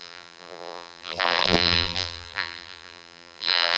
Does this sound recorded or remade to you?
remade